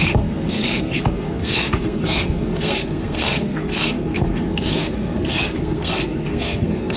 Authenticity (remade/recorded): remade